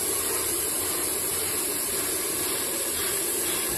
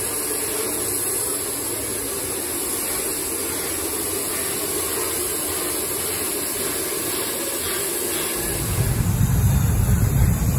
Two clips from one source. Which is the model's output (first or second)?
first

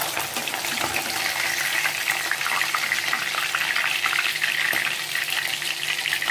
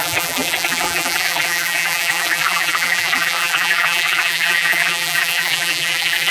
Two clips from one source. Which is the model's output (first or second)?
second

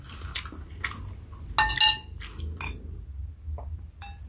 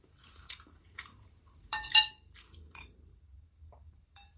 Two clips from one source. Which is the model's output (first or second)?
second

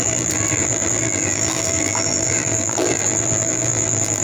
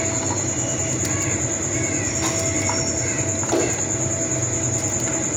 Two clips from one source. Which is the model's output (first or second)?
first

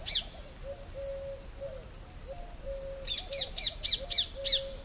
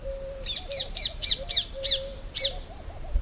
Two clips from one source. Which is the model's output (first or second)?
second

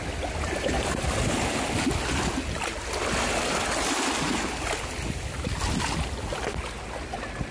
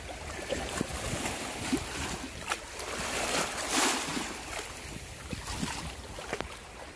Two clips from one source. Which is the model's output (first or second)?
second